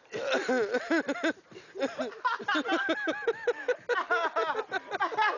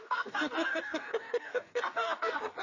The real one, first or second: first